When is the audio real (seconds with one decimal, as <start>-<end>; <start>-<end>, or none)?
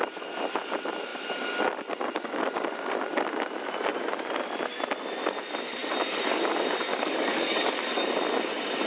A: 0.0-6.9; 8.1-8.9